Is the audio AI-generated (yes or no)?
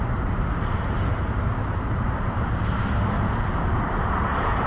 yes